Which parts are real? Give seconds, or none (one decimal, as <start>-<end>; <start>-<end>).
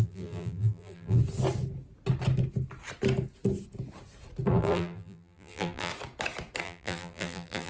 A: 1.2-4.5; 5.9-6.6